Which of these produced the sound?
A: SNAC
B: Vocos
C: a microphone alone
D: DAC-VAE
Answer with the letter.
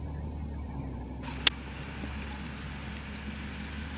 C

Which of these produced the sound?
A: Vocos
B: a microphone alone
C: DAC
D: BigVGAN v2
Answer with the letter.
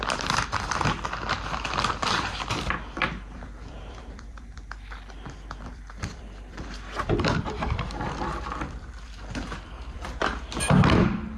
D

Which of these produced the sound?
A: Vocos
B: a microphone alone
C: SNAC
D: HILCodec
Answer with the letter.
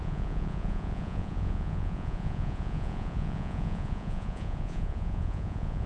A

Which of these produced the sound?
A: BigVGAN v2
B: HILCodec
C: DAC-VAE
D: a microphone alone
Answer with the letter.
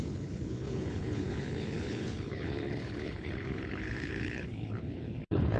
B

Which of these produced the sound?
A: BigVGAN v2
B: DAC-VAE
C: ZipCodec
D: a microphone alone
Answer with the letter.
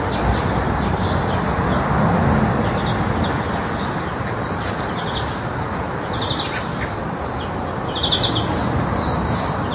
D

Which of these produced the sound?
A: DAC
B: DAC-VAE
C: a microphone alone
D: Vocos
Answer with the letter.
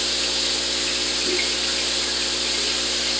C